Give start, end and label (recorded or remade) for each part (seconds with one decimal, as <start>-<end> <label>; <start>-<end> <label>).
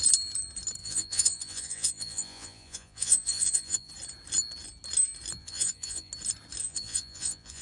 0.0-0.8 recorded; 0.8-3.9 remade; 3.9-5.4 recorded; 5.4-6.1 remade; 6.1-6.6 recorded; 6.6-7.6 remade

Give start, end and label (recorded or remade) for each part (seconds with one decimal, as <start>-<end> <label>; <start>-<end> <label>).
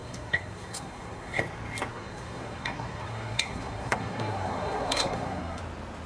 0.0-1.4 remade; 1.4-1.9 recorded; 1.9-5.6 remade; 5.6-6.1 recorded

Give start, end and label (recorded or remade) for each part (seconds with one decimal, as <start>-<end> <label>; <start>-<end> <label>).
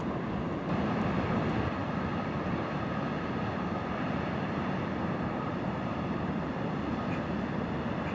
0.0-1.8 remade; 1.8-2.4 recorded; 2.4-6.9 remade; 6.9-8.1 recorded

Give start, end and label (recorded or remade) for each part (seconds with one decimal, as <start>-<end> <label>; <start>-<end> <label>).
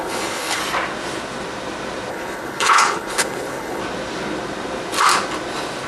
0.0-0.6 remade; 0.6-2.1 recorded; 2.1-3.8 remade; 3.8-5.9 recorded